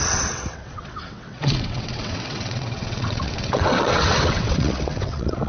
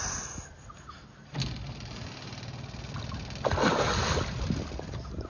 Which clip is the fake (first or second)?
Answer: first